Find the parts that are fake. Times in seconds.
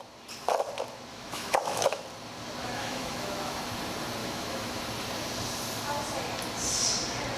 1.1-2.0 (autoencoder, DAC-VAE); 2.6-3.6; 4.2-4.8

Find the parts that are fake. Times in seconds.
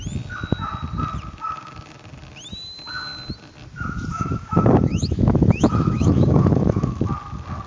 4.1-7.0 (autoencoder, DAC-VAE)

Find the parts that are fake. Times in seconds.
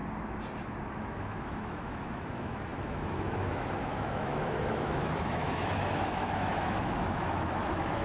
0.9-8.0 (autoencoder, DAC-VAE)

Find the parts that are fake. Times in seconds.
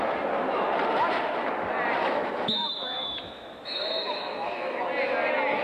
2.0-4.8 (autoencoder, DAC-VAE)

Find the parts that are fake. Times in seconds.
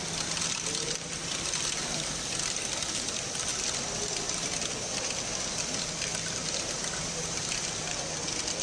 none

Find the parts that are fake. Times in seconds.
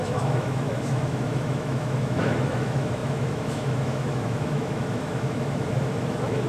0.0-6.5 (autoencoder, DAC-VAE)